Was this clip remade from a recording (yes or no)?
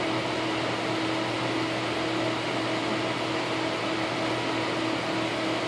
no